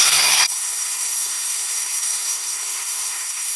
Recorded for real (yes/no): no